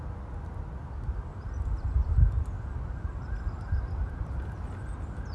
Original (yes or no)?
yes